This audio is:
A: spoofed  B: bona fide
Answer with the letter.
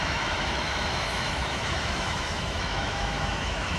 A